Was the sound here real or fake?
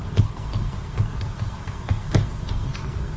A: fake